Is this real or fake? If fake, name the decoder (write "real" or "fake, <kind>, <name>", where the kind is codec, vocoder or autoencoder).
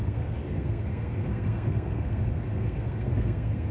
fake, codec, SNAC